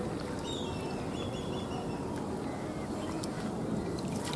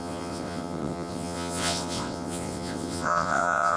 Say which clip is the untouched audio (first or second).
first